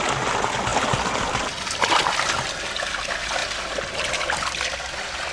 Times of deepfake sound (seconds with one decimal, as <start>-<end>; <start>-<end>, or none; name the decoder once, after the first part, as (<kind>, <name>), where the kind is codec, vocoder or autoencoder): none